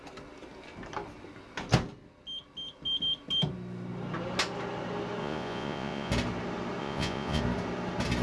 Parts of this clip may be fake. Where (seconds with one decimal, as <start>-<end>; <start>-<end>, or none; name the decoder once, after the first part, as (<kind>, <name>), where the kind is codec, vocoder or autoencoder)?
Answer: 5.2-6.1 (vocoder, Vocos); 6.8-7.4